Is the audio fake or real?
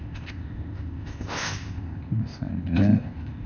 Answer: fake